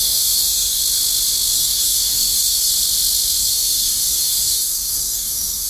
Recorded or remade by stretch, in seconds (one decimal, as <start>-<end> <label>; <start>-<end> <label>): 0.0-0.8 remade; 0.8-1.5 recorded; 1.5-2.7 remade; 2.7-3.4 recorded; 3.4-5.7 remade

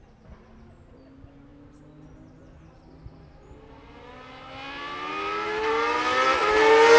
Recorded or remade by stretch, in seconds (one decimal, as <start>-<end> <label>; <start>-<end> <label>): 0.0-7.0 recorded

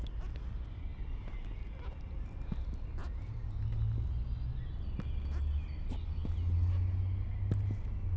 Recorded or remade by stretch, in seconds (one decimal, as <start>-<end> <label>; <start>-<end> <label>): 0.0-8.2 recorded

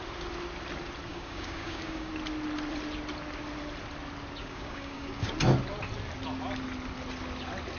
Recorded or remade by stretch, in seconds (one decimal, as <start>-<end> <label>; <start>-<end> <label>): 0.0-1.1 recorded; 1.1-2.1 remade; 2.1-4.4 recorded; 4.4-5.3 remade; 5.3-7.8 recorded

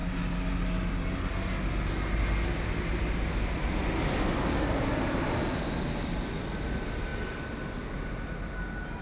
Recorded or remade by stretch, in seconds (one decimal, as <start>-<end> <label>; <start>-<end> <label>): 0.0-9.0 recorded

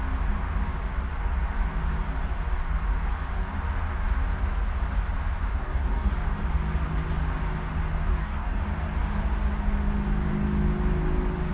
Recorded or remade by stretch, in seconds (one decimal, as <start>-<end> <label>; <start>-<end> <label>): 0.0-5.5 recorded; 5.5-6.1 remade; 6.1-8.1 recorded; 8.1-8.6 remade; 8.6-11.5 recorded

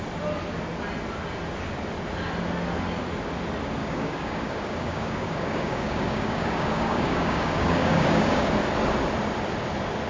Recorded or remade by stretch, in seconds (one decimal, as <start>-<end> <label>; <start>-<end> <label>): 0.0-3.8 recorded; 3.8-8.5 remade; 8.5-10.1 recorded

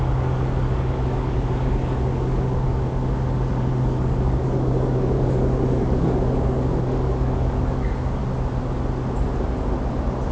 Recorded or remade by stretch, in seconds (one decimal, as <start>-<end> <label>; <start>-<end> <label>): 0.0-8.2 remade; 8.2-10.3 recorded